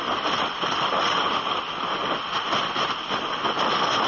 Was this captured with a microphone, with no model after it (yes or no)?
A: yes